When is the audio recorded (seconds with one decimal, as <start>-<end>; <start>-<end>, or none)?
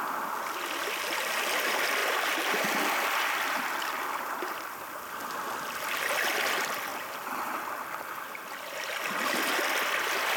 0.0-6.9; 7.6-10.4